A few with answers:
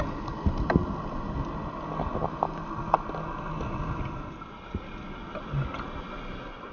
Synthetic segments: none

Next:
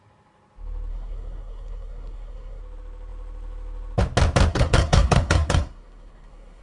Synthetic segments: 0.9-2.6 (codec, SNAC); 4.5-6.6

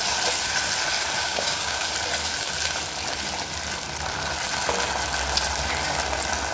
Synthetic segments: 1.2-1.9 (codec, DAC)

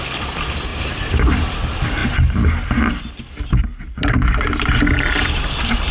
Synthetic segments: none

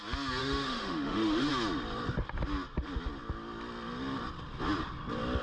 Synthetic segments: 0.4-1.5 (autoencoder, DAC-VAE)

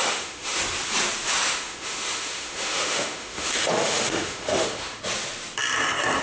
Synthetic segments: 0.0-0.6 (autoencoder, DAC-VAE); 1.3-5.0

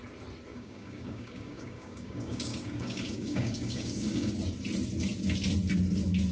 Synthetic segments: 0.5-4.3 (codec, DAC)

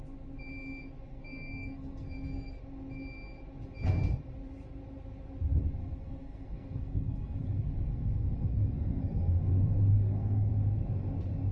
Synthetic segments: 1.1-2.6 (codec, SNAC); 5.8-10.5